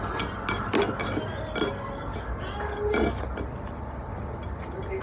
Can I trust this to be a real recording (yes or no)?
yes